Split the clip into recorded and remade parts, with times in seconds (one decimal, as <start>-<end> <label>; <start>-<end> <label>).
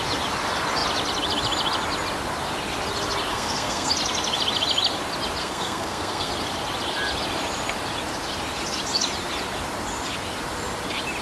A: 0.0-3.3 recorded; 3.3-3.9 remade; 3.9-5.4 recorded; 5.4-6.3 remade; 6.3-11.2 recorded